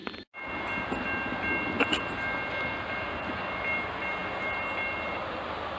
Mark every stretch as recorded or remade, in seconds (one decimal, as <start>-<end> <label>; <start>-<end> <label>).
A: 0.0-5.8 recorded